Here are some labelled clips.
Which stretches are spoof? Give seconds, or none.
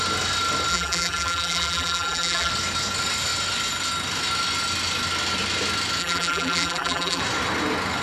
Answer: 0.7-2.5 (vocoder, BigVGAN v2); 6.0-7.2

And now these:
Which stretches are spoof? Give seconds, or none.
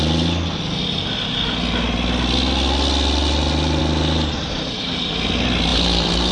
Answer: 5.7-6.3 (vocoder, BigVGAN v2)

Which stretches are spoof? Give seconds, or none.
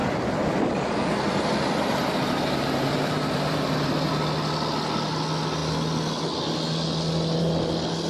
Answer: 2.0-4.1 (vocoder, BigVGAN v2)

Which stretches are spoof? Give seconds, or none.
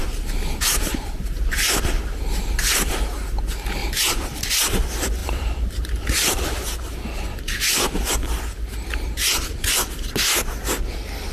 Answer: 0.0-2.9 (vocoder, BigVGAN v2); 3.8-4.4; 5.2-7.4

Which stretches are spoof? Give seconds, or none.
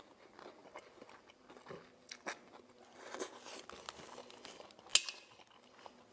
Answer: none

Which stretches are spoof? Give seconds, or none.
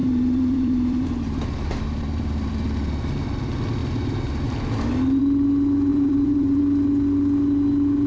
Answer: 0.0-2.5 (vocoder, BigVGAN v2); 5.9-6.6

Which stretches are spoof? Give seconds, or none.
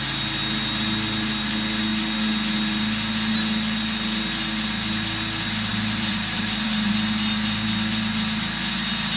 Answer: 5.7-6.9 (vocoder, BigVGAN v2)